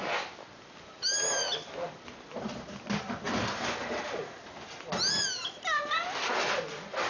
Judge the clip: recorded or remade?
recorded